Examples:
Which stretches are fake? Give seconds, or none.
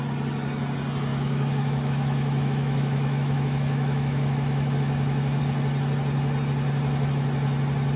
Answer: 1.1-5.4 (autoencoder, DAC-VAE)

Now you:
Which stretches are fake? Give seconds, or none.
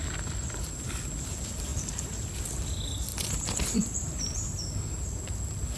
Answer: 1.7-2.4 (vocoder, BigVGAN v2); 3.1-4.6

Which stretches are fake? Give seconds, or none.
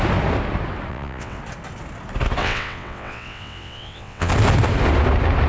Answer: 0.9-1.4 (vocoder, WaveNeXt); 2.4-4.3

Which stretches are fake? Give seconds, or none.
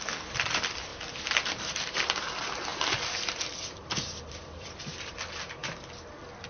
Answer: 0.0-0.9 (vocoder, BigVGAN v2); 1.5-5.6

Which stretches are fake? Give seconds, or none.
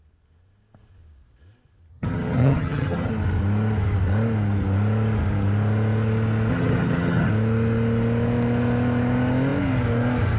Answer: 1.9-3.1 (vocoder, HiFi-GAN); 6.5-7.3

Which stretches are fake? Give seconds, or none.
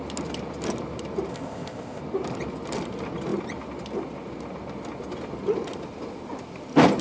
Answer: 1.3-2.0 (codec, ZipCodec)